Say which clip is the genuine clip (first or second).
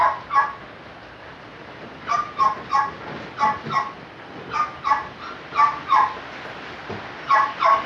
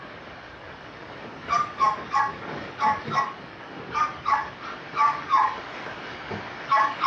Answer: first